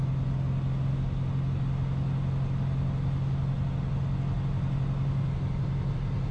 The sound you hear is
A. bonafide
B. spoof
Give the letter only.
A